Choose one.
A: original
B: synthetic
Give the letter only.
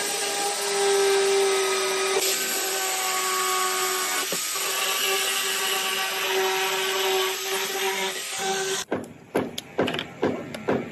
A